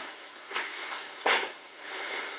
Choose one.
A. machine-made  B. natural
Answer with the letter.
A